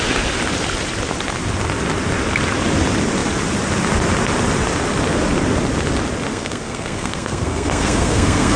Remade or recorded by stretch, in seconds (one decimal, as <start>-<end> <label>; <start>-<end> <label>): 0.0-6.3 recorded; 6.3-8.6 remade